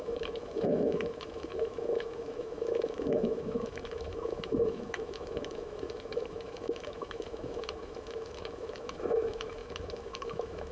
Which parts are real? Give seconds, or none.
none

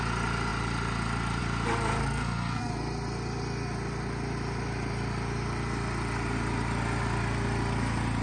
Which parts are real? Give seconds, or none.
0.0-2.0; 2.7-8.2

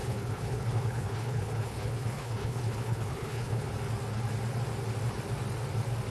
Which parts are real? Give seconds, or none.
3.7-6.1

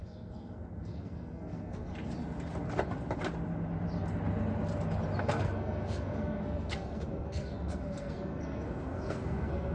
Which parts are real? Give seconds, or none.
1.9-5.2

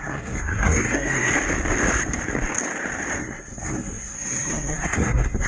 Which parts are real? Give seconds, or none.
1.3-3.2